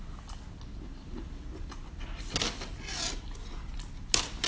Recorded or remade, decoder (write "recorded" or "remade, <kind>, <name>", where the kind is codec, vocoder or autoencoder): recorded